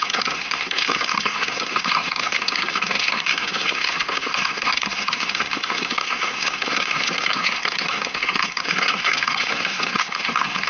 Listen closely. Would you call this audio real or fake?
fake